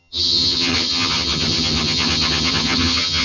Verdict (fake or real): fake